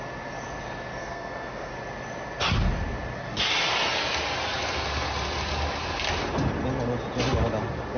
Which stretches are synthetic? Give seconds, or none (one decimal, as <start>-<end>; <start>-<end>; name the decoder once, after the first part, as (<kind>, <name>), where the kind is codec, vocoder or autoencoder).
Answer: 1.0-1.7 (codec, SNAC)